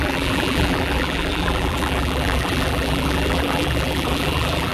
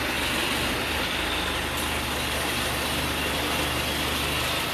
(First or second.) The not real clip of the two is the first